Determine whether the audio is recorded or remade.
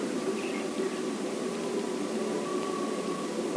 recorded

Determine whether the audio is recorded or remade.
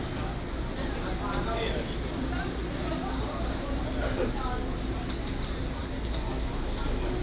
recorded